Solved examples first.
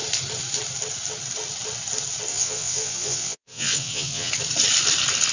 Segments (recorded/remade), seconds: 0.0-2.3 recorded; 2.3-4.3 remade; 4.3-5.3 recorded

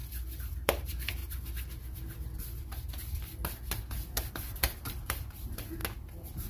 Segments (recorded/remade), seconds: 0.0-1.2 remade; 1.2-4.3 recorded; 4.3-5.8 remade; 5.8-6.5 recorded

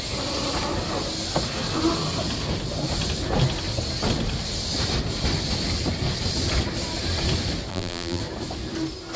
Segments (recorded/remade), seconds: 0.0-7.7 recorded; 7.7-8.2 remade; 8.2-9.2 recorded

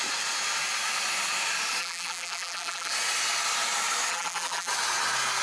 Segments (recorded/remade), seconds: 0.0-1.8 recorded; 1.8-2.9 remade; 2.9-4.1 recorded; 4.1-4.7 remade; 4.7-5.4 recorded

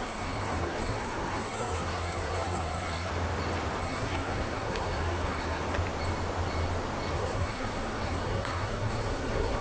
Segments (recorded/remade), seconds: 0.0-3.1 remade; 3.1-3.8 recorded; 3.8-5.6 remade; 5.6-7.1 recorded; 7.1-9.6 remade

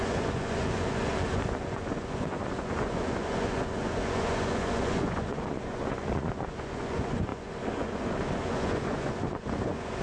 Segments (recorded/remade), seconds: 0.0-10.0 remade